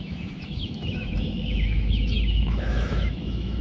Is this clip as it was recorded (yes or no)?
no